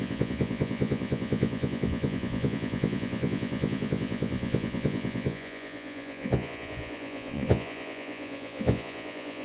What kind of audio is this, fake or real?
fake